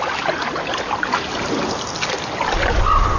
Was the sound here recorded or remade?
recorded